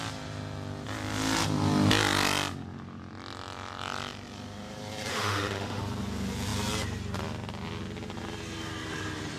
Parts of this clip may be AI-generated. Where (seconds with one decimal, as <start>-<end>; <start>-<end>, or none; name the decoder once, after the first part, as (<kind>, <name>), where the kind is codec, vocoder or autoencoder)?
5.1-5.8 (autoencoder, DAC-VAE)